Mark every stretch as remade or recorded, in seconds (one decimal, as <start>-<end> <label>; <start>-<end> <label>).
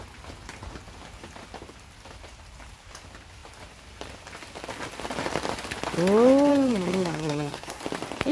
0.0-6.5 recorded; 6.5-7.8 remade; 7.8-8.3 recorded